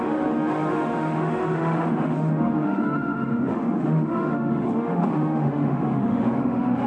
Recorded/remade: remade